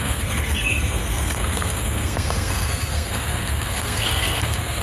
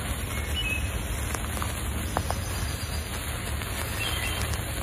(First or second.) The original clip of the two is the second